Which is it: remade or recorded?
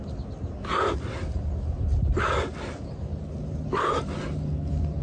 recorded